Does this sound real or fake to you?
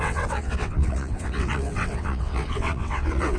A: fake